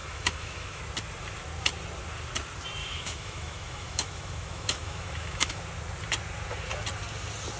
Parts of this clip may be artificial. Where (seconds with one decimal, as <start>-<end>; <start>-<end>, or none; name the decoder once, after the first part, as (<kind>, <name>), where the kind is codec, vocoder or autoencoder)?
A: 0.0-0.8 (autoencoder, DAC-VAE); 2.8-5.6